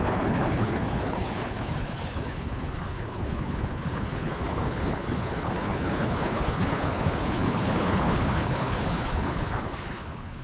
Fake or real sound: fake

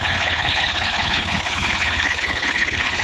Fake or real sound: fake